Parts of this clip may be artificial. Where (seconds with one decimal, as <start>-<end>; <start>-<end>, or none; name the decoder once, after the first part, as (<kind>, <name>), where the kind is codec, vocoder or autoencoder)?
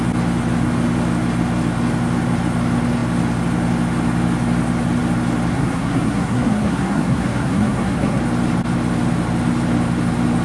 5.5-8.2 (codec, SNAC)